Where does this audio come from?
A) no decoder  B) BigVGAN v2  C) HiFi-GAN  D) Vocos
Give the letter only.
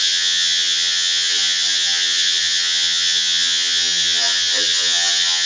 C